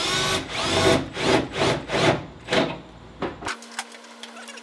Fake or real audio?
real